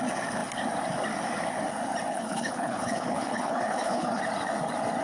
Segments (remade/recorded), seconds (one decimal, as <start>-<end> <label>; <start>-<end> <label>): 0.0-2.1 recorded; 2.1-4.2 remade; 4.2-5.0 recorded